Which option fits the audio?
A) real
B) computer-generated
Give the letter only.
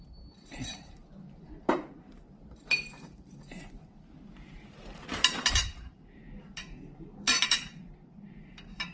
B